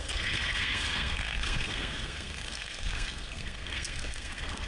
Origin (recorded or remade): remade